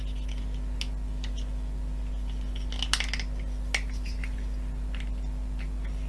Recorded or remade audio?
recorded